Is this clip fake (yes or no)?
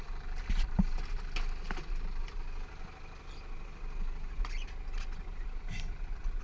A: no